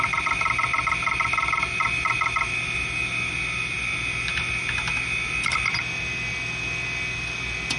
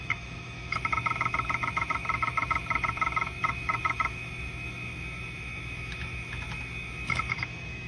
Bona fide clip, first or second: first